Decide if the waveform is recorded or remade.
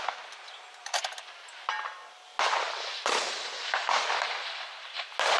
recorded